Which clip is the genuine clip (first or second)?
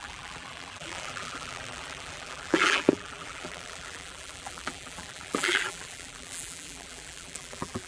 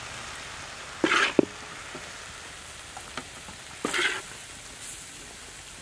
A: second